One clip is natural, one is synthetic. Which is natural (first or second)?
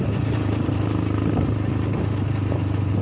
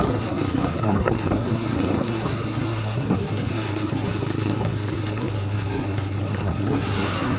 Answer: first